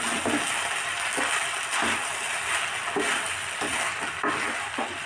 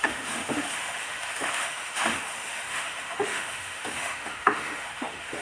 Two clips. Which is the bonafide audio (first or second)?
first